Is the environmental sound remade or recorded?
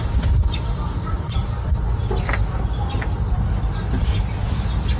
recorded